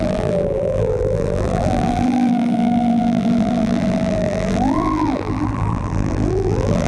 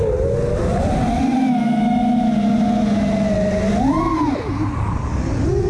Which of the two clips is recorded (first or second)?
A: second